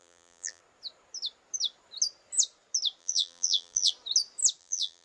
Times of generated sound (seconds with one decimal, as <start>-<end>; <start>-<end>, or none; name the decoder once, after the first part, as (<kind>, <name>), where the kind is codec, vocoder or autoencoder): 0.0-0.6 (vocoder, BigVGAN v2); 3.0-3.9; 4.6-5.0